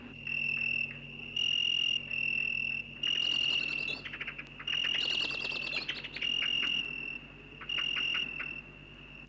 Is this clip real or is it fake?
real